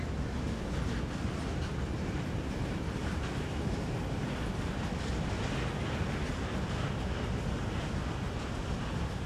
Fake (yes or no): no